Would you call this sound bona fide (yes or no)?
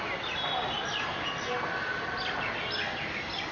yes